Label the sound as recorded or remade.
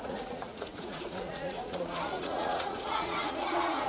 remade